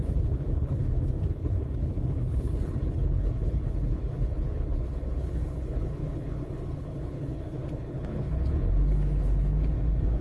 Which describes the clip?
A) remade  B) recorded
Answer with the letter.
A